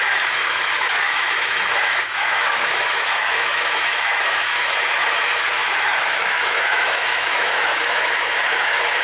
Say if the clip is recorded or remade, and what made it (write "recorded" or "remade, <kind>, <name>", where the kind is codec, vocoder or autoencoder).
remade, autoencoder, DAC-VAE